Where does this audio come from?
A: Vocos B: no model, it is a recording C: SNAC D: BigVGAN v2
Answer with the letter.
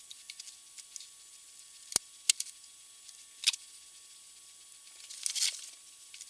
B